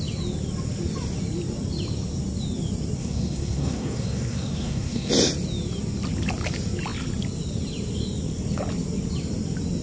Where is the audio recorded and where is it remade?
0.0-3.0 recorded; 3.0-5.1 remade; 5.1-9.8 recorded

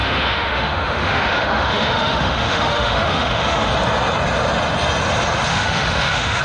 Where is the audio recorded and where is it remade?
0.0-3.7 remade; 3.7-5.5 recorded; 5.5-6.4 remade

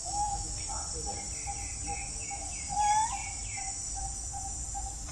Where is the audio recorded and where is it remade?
0.0-0.7 remade; 0.7-1.9 recorded; 1.9-2.6 remade; 2.6-5.1 recorded

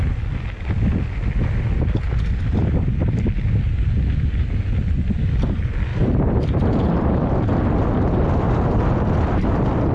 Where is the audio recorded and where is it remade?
0.0-5.9 recorded; 5.9-7.3 remade; 7.3-9.9 recorded

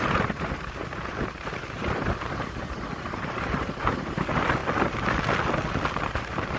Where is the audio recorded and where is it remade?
0.0-4.6 remade; 4.6-6.0 recorded; 6.0-6.6 remade